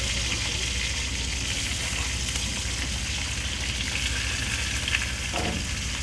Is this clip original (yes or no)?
yes